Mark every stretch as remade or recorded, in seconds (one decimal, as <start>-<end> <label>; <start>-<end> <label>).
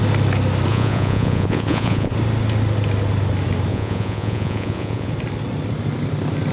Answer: 0.0-0.7 recorded; 0.7-2.1 remade; 2.1-3.7 recorded; 3.7-5.1 remade; 5.1-6.5 recorded